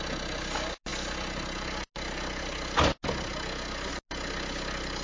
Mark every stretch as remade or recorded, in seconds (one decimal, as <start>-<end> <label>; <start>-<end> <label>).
0.0-5.0 recorded